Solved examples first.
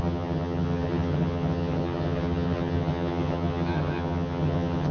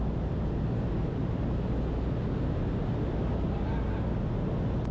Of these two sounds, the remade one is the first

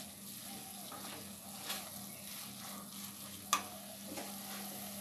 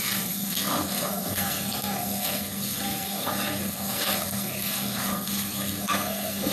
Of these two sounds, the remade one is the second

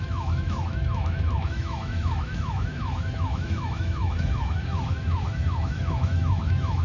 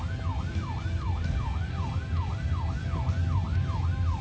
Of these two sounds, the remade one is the first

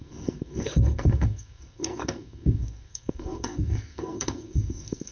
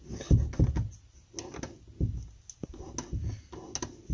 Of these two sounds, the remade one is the first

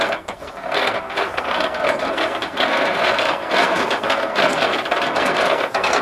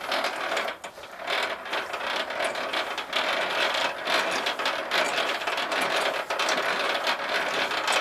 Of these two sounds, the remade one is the first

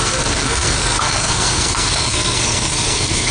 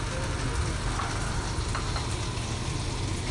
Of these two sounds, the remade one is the first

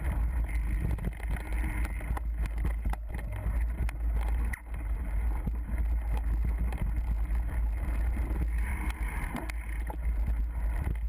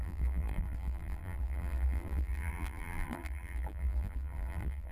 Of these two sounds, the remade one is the second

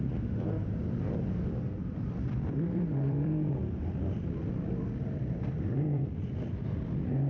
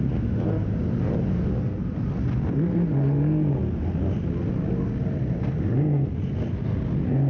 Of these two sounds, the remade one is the first